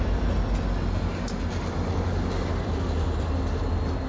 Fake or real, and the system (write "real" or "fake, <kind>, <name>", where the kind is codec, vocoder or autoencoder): real